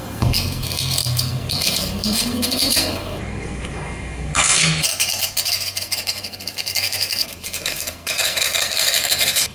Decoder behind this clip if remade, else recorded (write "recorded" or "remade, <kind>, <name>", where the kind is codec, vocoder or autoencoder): remade, codec, SNAC